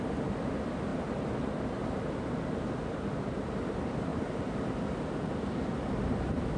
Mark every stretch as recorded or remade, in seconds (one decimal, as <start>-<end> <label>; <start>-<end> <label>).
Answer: 0.0-6.6 recorded